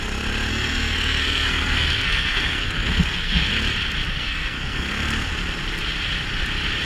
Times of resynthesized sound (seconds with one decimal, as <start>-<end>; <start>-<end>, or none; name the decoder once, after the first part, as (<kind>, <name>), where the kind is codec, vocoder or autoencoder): 0.5-3.5 (codec, SNAC); 4.1-5.3